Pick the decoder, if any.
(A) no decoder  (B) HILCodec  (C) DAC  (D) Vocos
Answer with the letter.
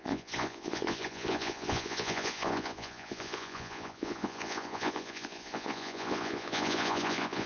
D